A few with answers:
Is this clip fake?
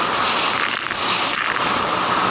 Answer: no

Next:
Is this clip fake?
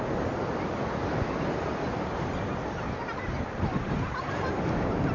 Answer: no